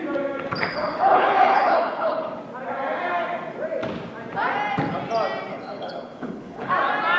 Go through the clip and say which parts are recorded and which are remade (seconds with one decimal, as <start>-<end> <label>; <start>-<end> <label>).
0.0-0.7 recorded; 0.7-2.4 remade; 2.4-5.5 recorded; 5.5-6.7 remade; 6.7-7.2 recorded